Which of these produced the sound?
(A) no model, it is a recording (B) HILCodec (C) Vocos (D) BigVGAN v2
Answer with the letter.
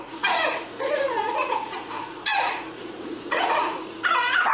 C